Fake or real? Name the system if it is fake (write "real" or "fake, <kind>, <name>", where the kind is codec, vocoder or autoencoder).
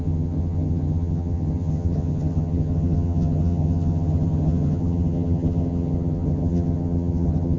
fake, vocoder, HiFi-GAN